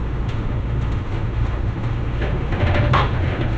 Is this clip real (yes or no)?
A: no